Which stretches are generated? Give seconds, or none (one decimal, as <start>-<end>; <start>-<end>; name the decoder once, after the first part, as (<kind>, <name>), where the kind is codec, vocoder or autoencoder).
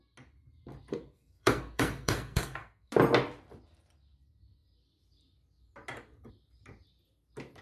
0.9-2.9 (codec, SNAC)